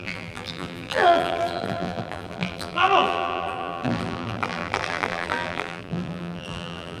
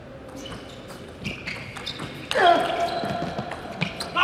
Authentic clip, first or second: second